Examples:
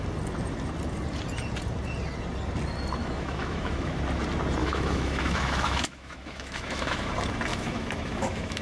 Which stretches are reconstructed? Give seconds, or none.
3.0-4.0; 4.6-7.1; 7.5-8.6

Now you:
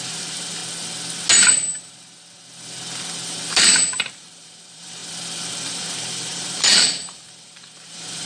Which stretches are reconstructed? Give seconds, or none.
0.0-0.6; 3.5-5.0; 5.5-8.3

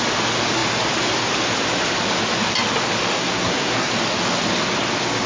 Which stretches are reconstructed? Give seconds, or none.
3.1-3.9

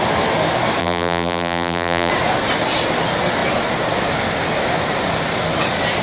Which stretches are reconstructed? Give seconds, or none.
0.8-2.1

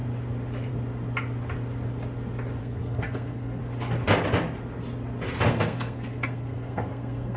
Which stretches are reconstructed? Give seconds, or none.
2.6-3.6; 5.5-7.4